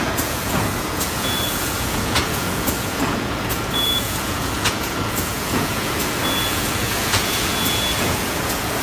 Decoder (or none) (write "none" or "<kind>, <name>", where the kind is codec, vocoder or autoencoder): vocoder, Vocos